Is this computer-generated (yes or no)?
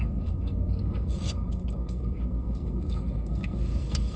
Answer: yes